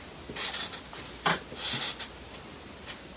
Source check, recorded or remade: recorded